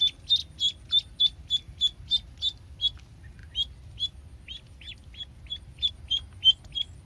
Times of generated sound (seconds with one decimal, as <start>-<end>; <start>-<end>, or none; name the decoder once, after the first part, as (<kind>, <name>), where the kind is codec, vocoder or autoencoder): none